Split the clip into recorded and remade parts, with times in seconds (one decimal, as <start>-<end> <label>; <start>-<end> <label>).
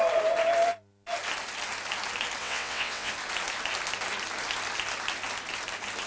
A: 0.0-2.4 recorded; 2.4-3.1 remade; 3.1-6.1 recorded